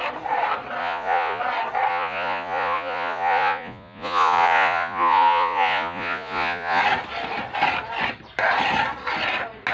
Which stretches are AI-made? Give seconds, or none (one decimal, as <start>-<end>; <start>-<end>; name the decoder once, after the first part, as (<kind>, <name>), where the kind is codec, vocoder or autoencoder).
0.8-1.4 (vocoder, Vocos); 1.9-6.8